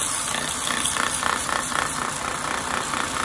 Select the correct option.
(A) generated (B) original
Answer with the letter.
B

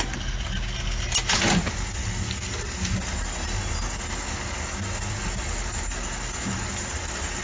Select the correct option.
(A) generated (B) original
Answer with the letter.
B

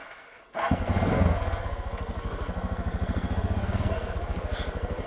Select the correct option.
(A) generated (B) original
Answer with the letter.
A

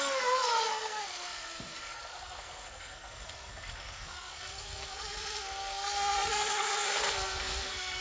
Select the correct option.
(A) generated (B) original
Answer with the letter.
A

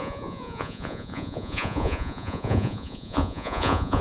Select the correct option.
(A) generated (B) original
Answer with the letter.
A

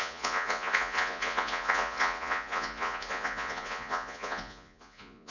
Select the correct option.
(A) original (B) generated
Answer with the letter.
B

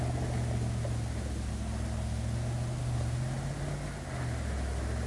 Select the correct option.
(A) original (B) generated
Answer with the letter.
A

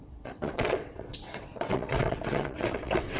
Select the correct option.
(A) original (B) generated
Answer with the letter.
B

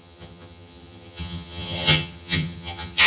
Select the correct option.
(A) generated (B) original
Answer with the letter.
A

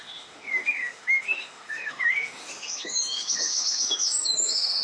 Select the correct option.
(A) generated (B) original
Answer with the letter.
A